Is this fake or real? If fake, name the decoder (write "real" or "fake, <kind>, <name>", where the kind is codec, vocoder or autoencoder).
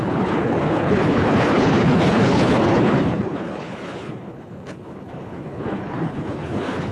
fake, codec, HILCodec